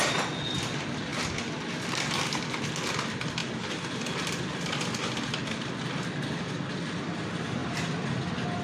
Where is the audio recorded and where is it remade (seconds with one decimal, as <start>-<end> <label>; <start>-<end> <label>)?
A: 0.0-7.6 recorded; 7.6-8.2 remade; 8.2-8.6 recorded